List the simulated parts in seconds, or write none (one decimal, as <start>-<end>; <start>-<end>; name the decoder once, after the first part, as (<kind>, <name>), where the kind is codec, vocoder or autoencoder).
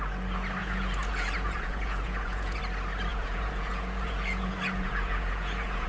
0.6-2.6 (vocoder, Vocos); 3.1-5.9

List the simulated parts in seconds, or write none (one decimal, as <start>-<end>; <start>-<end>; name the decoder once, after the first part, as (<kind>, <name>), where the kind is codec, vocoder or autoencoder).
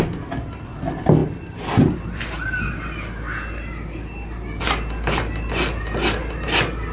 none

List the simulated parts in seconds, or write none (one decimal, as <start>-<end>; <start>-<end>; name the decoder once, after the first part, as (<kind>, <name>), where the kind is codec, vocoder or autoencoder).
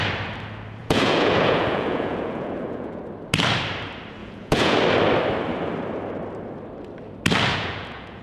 0.8-3.0 (vocoder, Vocos); 4.2-4.8; 7.5-8.2